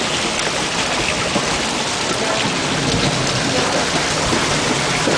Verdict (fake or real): real